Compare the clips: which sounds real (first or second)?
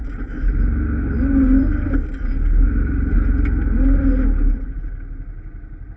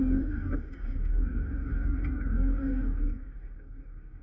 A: first